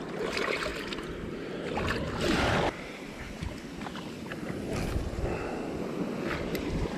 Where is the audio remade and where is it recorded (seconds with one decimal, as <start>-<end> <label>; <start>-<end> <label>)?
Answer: 0.0-7.0 recorded

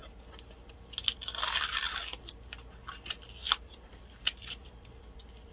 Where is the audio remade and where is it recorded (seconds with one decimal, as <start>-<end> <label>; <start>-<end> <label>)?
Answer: 0.0-3.4 recorded; 3.4-4.0 remade; 4.0-4.4 recorded; 4.4-5.5 remade